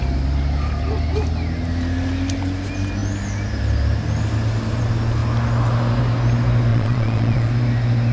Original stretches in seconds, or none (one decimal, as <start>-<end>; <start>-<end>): 0.0-6.7; 7.5-8.1